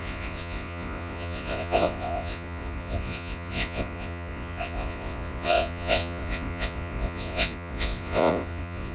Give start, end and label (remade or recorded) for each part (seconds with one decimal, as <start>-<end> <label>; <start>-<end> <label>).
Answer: 0.0-8.9 remade